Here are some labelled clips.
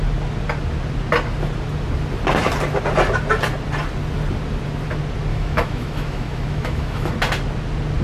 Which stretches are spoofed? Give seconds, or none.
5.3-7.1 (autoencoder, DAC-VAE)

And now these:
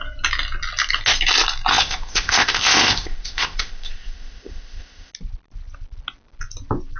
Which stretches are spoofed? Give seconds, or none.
1.7-5.1 (codec, ZipCodec)

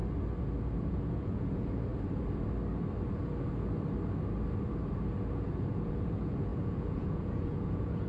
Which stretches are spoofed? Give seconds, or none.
0.9-1.9 (vocoder, Vocos); 5.3-8.1

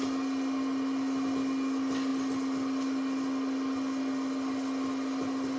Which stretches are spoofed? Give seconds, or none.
none

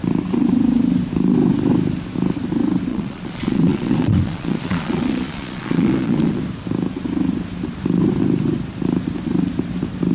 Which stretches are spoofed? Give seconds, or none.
2.9-6.4 (vocoder, Vocos)

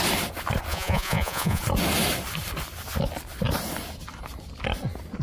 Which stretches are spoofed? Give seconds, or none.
0.7-1.6 (vocoder, Vocos)

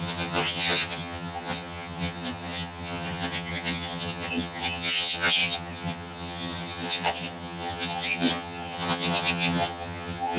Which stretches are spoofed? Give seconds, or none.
0.0-10.4 (vocoder, HiFi-GAN)